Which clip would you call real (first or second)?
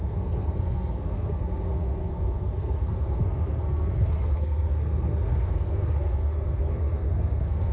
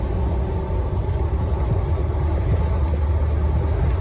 second